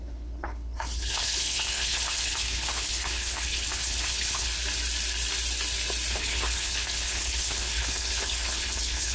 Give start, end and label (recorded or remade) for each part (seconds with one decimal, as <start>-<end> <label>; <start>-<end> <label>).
0.0-4.5 remade; 4.5-6.1 recorded; 6.1-9.1 remade